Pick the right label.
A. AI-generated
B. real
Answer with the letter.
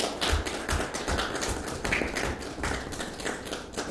B